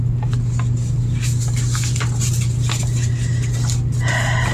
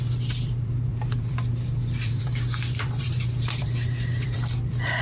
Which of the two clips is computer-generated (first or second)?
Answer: second